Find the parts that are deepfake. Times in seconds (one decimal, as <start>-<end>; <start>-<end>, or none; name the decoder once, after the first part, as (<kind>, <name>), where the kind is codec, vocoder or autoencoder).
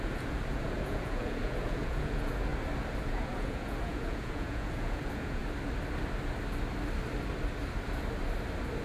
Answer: 0.0-2.5 (vocoder, Vocos); 3.0-5.4